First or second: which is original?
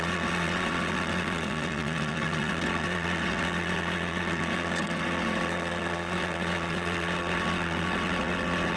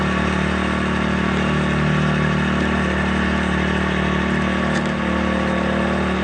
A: second